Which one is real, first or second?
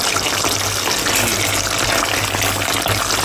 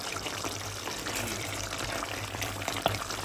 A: first